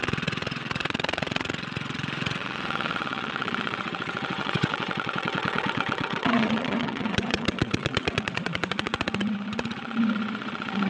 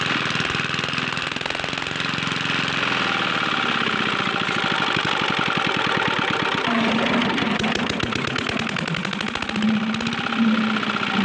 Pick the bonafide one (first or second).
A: second